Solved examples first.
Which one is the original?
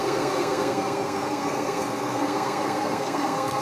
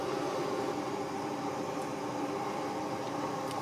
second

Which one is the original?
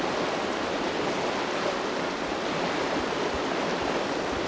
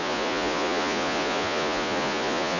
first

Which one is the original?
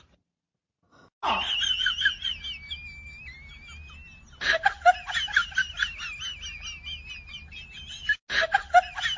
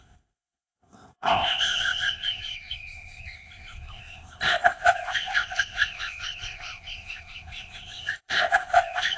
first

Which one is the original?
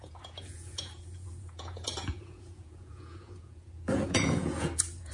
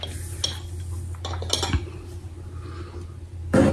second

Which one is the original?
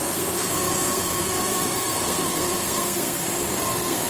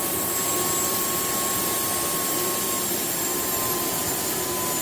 second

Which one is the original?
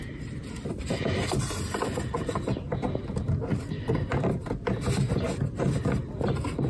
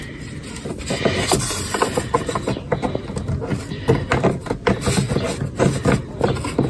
second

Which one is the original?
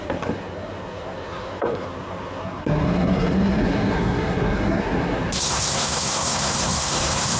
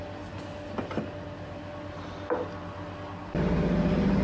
second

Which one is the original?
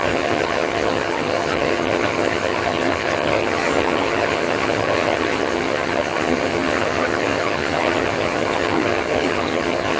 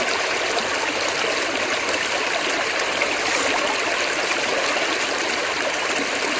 second